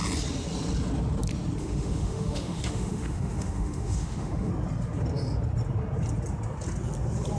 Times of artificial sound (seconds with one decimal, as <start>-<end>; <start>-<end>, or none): 1.6-4.5